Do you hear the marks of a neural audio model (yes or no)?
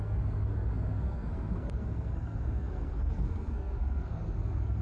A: yes